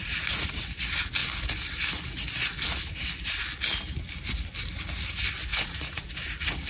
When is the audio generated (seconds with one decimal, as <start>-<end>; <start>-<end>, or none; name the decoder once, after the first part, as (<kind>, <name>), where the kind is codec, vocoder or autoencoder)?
0.0-0.6 (vocoder, Vocos); 5.5-6.1